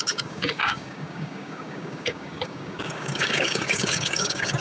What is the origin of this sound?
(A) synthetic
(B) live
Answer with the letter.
A